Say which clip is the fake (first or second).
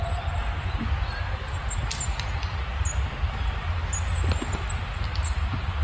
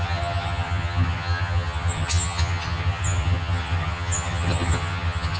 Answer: second